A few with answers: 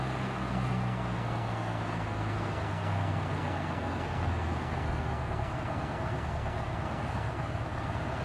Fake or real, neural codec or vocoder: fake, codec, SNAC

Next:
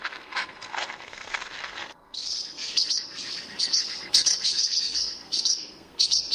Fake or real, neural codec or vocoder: fake, codec, SNAC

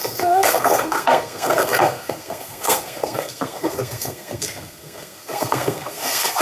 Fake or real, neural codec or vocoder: fake, codec, SNAC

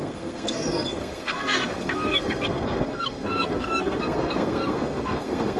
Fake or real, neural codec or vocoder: fake, codec, SNAC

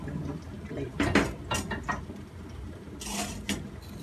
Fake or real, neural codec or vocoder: real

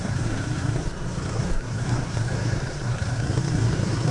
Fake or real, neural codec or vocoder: fake, codec, SNAC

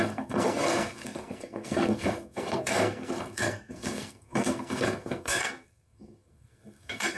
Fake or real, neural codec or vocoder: fake, codec, SNAC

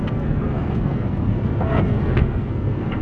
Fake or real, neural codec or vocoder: fake, codec, SNAC